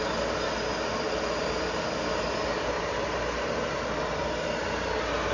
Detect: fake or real real